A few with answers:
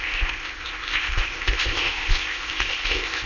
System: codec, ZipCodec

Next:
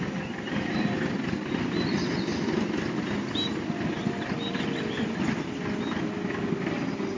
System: none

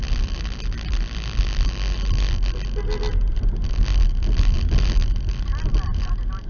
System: none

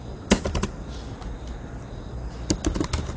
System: none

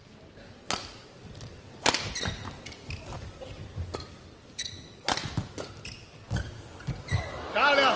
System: none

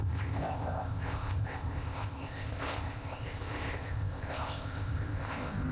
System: codec, ZipCodec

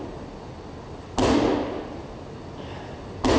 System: none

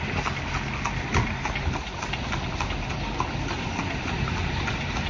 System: none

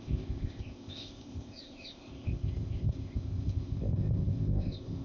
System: codec, ZipCodec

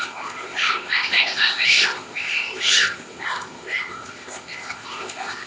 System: codec, ZipCodec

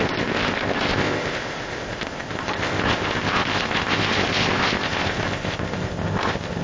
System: codec, ZipCodec